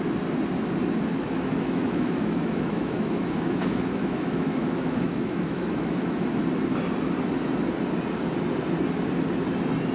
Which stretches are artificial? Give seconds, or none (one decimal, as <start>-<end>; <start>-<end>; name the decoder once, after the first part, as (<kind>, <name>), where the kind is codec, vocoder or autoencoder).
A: 1.2-6.2 (autoencoder, DAC-VAE)